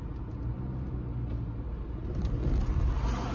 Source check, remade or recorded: recorded